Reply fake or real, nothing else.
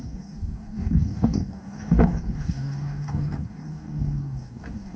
fake